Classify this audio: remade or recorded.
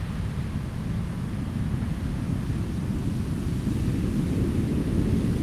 recorded